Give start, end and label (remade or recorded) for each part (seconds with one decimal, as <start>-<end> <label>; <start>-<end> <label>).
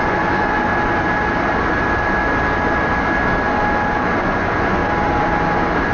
0.0-0.7 remade; 0.7-4.2 recorded; 4.2-4.8 remade; 4.8-5.9 recorded